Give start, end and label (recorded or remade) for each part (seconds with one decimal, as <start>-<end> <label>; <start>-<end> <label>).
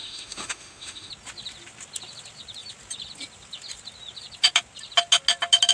0.0-1.1 remade; 1.1-5.7 recorded